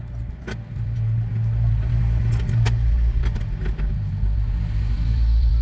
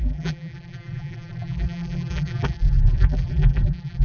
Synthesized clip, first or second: second